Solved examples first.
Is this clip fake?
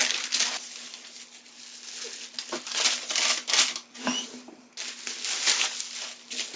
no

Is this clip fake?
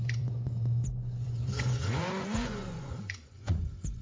yes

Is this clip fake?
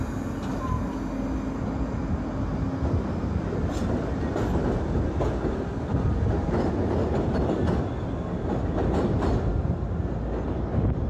no